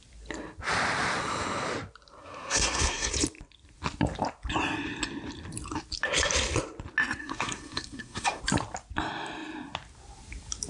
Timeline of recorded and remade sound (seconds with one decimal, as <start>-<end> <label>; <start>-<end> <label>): 0.0-2.2 recorded; 2.2-3.1 remade; 3.1-7.2 recorded; 7.2-8.4 remade; 8.4-10.7 recorded